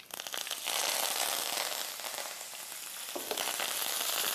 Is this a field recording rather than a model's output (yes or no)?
yes